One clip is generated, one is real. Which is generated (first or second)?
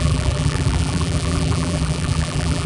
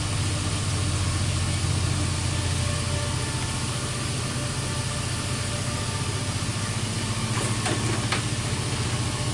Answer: first